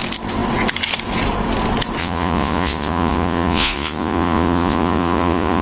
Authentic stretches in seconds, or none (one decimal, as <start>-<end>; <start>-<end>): 0.0-2.0